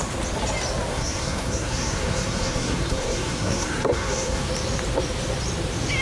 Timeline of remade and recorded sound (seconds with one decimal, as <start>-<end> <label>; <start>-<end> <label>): 0.0-0.9 recorded; 0.9-4.5 remade; 4.5-6.0 recorded